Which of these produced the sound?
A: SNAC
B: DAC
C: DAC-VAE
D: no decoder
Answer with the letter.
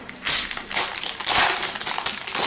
D